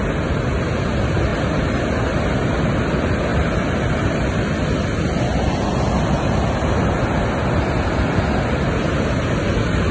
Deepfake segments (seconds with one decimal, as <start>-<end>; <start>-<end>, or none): none